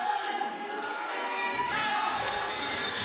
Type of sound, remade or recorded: remade